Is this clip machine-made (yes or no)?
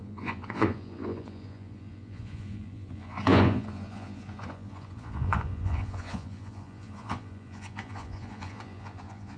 yes